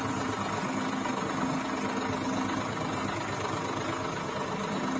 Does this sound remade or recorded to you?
recorded